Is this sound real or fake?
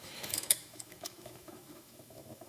fake